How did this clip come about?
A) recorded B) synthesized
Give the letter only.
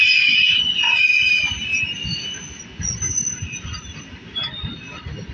A